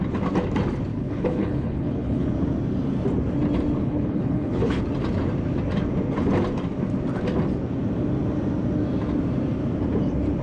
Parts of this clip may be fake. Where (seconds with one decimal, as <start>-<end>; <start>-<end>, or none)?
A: 0.9-2.3; 3.8-4.8